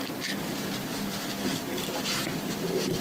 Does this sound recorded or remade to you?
recorded